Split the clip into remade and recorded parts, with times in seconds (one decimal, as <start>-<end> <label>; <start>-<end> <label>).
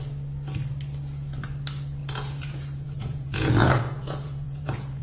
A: 0.0-2.0 recorded; 2.0-5.0 remade